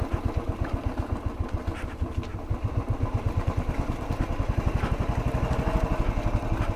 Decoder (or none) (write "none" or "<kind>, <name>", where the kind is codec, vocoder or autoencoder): none